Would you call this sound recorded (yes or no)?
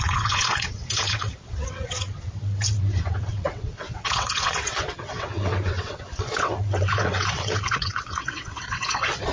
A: no